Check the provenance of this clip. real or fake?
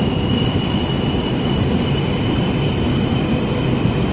fake